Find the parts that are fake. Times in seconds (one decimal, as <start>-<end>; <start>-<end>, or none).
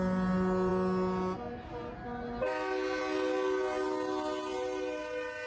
none